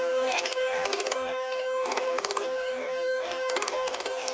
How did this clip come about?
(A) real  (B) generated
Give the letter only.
B